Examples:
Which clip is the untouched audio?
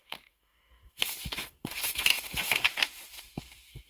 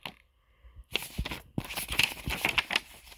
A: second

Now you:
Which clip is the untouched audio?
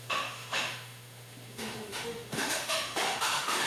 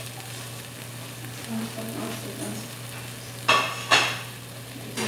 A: second